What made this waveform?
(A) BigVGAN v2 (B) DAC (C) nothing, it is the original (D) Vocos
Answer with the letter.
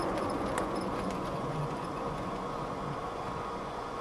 D